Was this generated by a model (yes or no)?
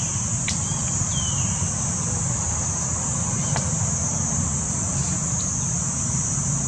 no